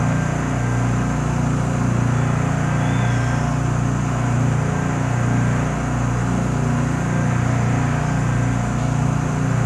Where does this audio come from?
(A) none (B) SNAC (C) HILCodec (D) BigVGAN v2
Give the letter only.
A